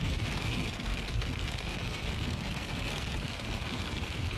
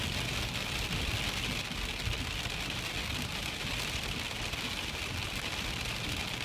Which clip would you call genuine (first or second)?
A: second